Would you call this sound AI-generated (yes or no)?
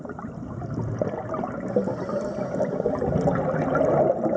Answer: no